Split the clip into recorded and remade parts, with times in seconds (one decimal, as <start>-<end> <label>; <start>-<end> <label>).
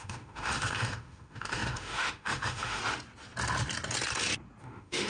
0.0-2.8 remade; 2.8-4.6 recorded; 4.6-5.1 remade